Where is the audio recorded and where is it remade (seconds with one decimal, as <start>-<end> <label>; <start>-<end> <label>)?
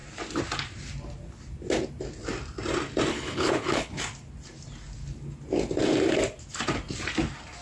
0.0-3.1 recorded; 3.1-4.0 remade; 4.0-7.6 recorded